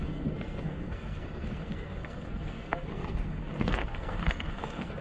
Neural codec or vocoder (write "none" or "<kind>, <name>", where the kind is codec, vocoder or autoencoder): codec, SNAC